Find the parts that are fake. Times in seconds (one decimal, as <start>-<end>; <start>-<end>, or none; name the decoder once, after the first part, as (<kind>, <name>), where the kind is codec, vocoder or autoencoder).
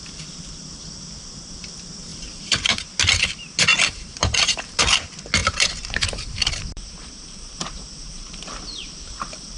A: 2.1-2.8 (vocoder, BigVGAN v2); 3.7-4.8; 5.4-9.6